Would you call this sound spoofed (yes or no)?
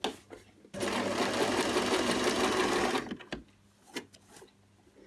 no